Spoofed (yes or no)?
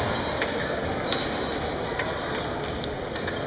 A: no